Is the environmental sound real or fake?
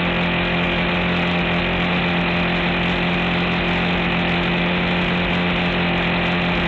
real